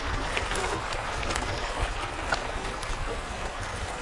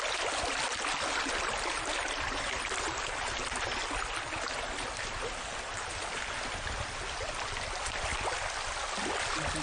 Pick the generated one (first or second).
first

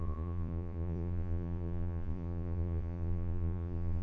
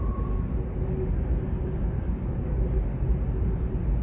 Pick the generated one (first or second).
first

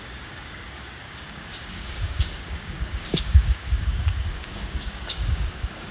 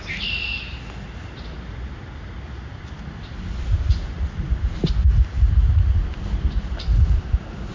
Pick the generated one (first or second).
first